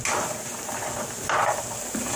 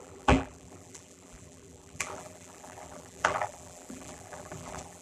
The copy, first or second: second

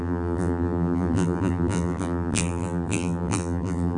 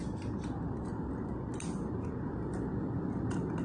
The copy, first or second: first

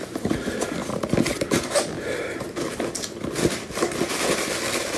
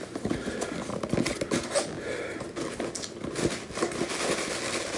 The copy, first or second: first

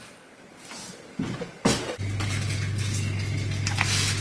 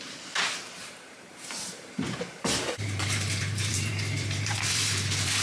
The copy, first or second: second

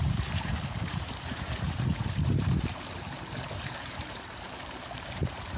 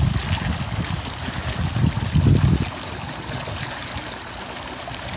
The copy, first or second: first